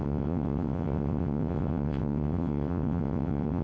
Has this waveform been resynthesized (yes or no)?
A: yes